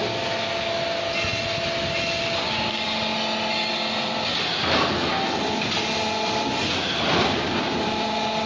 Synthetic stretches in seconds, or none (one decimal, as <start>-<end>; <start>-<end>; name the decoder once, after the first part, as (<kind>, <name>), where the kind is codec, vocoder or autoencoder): none